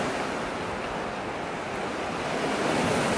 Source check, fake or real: real